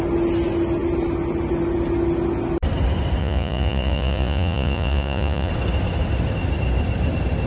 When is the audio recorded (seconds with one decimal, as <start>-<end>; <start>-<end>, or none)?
0.0-3.2; 5.5-7.5

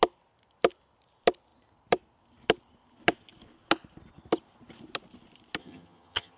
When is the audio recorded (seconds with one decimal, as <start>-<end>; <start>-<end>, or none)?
0.0-5.6

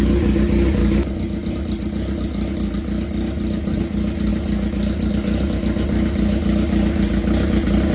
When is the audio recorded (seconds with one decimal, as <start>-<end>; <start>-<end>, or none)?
0.0-7.9

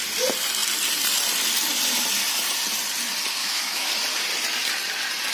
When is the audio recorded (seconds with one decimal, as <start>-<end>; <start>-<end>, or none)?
0.0-3.4; 3.9-5.3

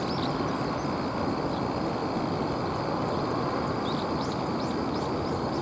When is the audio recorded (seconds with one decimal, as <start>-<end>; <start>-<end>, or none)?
0.0-5.6

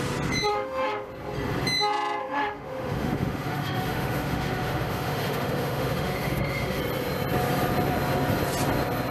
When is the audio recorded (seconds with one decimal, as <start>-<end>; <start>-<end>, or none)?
0.0-0.5; 1.1-2.2; 6.8-9.1

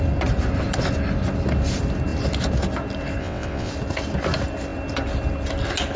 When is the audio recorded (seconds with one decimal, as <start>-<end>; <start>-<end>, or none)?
0.0-3.2; 3.7-6.0

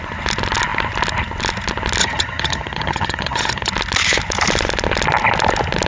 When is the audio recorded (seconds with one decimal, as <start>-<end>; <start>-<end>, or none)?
0.0-2.0; 3.7-5.9